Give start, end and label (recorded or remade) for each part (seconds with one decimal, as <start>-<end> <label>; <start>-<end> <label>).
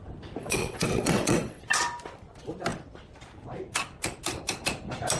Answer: 0.0-0.4 recorded; 0.4-1.6 remade; 1.6-5.2 recorded